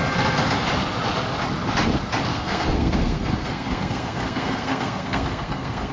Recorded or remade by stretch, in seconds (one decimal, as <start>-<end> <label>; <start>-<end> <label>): 0.0-2.3 recorded; 2.3-5.9 remade